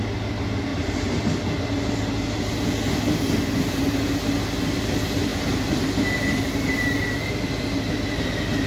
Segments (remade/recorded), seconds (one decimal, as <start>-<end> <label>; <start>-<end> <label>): 0.0-0.7 recorded; 0.7-1.2 remade; 1.2-8.7 recorded